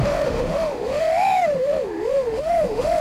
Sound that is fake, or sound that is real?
fake